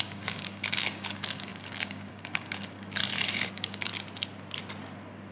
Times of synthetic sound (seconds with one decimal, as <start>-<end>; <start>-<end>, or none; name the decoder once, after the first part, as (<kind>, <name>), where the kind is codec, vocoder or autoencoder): 0.0-3.0 (codec, DAC); 3.5-3.9